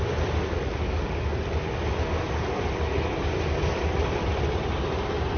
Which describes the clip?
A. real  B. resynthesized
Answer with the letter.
A